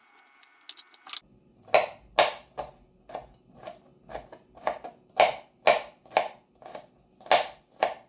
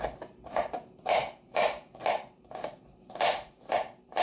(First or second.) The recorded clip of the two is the first